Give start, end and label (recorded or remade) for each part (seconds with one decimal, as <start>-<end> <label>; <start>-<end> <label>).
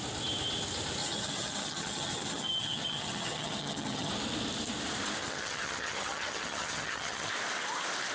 0.0-1.0 recorded; 1.0-4.1 remade; 4.1-5.2 recorded; 5.2-7.3 remade; 7.3-8.1 recorded